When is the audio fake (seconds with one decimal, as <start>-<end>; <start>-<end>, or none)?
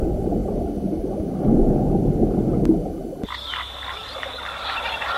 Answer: none